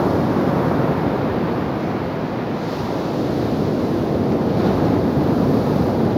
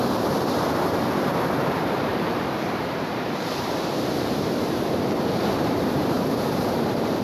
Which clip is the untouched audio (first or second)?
first